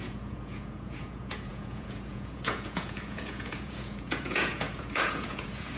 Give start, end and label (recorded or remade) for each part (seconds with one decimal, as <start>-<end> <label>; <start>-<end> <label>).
0.0-5.8 remade